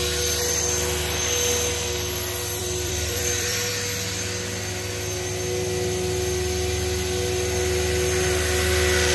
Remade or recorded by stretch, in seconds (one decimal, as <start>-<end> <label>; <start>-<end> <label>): 0.0-2.6 recorded; 2.6-3.7 remade; 3.7-9.1 recorded

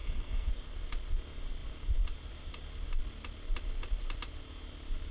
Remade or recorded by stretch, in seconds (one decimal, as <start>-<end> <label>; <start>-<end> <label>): 0.0-0.5 remade; 0.5-5.1 recorded

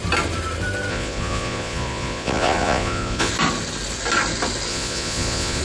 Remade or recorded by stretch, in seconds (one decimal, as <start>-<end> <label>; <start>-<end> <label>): 0.0-0.9 recorded; 0.9-3.3 remade; 3.3-4.7 recorded; 4.7-5.6 remade

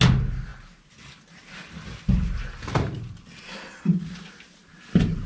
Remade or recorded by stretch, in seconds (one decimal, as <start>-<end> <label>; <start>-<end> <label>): 0.0-5.3 recorded

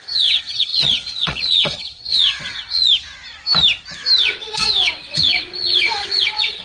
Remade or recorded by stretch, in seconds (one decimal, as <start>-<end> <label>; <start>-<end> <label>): 0.0-2.8 remade; 2.8-4.2 recorded; 4.2-6.6 remade

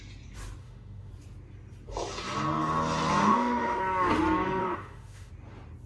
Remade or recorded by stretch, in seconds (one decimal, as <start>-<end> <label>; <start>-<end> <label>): 0.0-0.6 recorded; 0.6-1.1 remade; 1.1-3.2 recorded; 3.2-3.8 remade; 3.8-4.6 recorded; 4.6-5.3 remade; 5.3-5.9 recorded

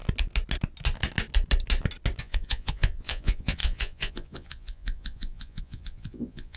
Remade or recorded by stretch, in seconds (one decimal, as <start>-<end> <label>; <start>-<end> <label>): 0.0-2.2 recorded; 2.2-6.6 remade